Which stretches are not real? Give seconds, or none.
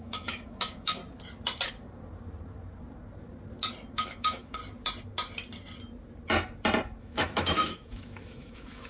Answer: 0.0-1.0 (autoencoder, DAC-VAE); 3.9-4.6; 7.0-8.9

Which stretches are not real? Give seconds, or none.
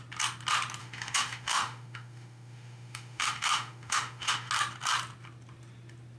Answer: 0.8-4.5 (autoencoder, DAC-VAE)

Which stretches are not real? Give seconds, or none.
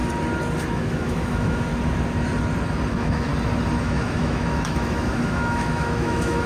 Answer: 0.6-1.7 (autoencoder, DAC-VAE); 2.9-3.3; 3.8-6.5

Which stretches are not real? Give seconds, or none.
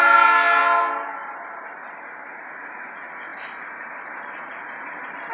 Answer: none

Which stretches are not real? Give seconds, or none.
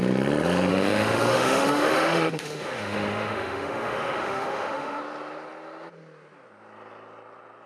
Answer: 0.7-5.0 (autoencoder, DAC-VAE)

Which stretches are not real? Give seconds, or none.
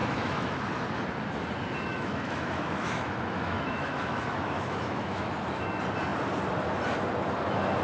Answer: 0.0-0.6 (autoencoder, DAC-VAE); 1.9-5.3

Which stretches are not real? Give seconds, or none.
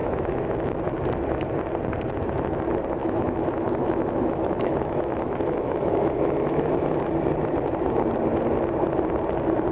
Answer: 0.0-0.8 (autoencoder, DAC-VAE); 3.0-7.1